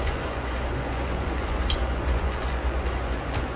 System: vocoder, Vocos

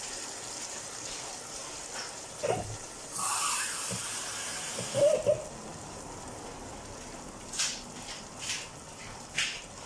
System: none